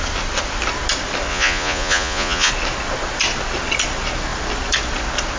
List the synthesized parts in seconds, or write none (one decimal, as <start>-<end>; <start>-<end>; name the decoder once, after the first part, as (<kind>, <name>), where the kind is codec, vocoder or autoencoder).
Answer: 1.3-2.5 (vocoder, Vocos)